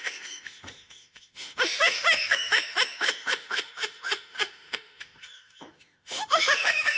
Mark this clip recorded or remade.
remade